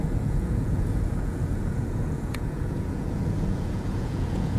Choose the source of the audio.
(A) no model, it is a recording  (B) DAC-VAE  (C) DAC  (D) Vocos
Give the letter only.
D